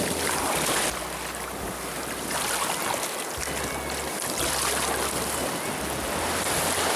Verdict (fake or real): real